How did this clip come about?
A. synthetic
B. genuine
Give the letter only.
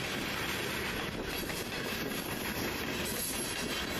B